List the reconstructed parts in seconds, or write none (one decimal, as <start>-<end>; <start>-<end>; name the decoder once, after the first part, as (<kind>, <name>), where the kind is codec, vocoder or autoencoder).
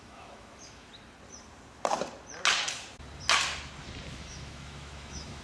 0.0-0.9 (autoencoder, DAC-VAE); 4.1-5.4